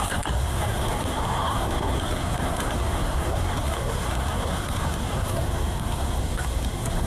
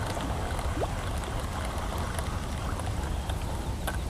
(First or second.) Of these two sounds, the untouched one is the second